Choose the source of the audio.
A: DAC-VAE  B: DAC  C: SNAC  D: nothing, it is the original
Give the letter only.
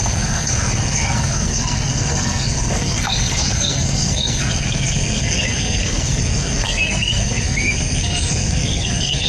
C